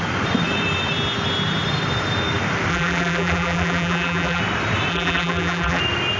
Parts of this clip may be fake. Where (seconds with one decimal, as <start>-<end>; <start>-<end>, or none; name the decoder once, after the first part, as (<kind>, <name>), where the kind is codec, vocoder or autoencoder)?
2.7-4.4 (vocoder, BigVGAN v2); 4.9-5.8